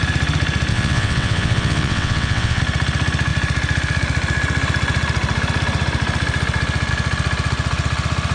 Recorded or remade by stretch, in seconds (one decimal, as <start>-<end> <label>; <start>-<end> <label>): 0.0-0.7 recorded; 0.7-2.6 remade; 2.6-8.3 recorded